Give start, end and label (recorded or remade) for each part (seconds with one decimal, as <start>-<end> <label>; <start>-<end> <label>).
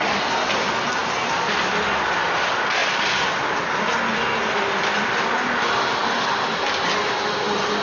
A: 0.0-1.0 recorded; 1.0-1.5 remade; 1.5-4.1 recorded; 4.1-4.9 remade; 4.9-7.8 recorded